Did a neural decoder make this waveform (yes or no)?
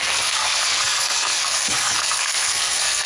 yes